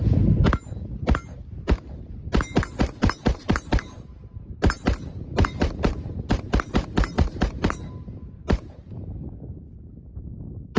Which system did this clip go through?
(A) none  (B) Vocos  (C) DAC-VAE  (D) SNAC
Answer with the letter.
A